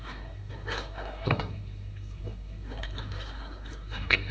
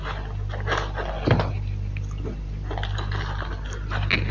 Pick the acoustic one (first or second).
second